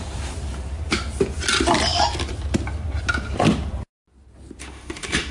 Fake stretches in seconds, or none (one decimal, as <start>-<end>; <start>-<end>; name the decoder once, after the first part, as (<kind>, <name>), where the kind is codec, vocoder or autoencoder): 4.6-5.3 (autoencoder, DAC-VAE)